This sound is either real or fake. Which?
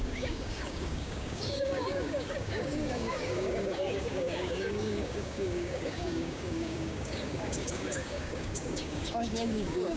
fake